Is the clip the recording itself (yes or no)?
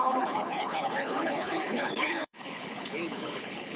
no